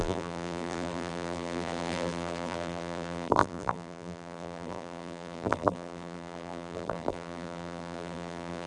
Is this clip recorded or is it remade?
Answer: remade